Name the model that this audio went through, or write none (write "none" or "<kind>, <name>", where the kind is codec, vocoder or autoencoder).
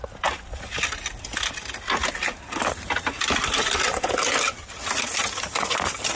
none